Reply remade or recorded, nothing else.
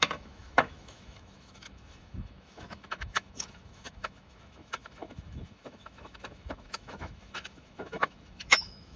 remade